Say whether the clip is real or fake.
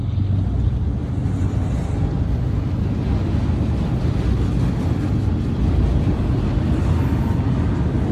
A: real